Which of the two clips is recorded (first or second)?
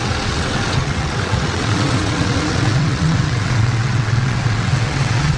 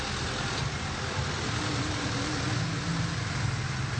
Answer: second